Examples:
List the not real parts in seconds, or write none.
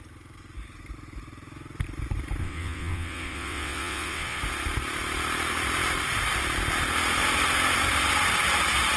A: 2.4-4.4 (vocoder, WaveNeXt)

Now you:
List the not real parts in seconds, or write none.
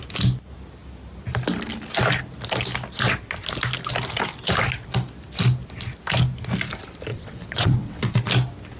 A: 7.1-8.3 (vocoder, WaveNeXt)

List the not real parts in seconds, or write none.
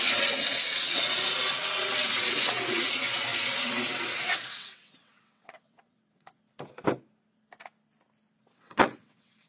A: 0.0-6.4 (vocoder, WaveNeXt); 8.4-9.5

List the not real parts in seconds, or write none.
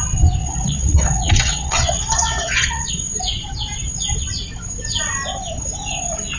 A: 0.4-2.9 (vocoder, WaveNeXt)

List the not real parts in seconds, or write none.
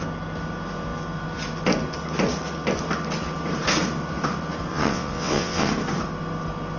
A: 4.7-5.7 (vocoder, WaveNeXt)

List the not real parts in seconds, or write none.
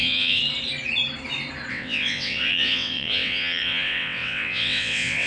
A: 0.0-0.4 (vocoder, WaveNeXt); 1.7-5.3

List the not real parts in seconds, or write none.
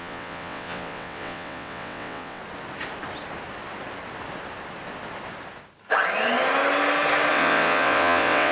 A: 0.0-2.4 (vocoder, WaveNeXt); 7.3-8.5